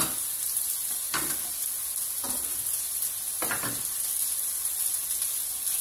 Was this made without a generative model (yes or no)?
yes